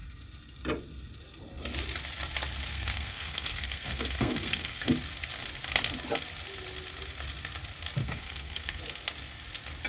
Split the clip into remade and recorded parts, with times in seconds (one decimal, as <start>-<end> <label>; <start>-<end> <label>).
0.0-2.7 recorded; 2.7-4.9 remade; 4.9-8.0 recorded; 8.0-8.8 remade; 8.8-9.9 recorded